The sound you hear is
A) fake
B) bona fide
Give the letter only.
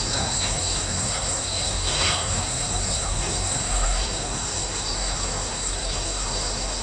A